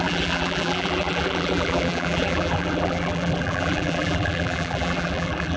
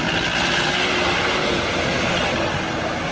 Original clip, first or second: second